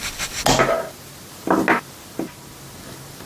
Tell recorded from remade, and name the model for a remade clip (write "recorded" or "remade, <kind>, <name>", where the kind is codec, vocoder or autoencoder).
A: recorded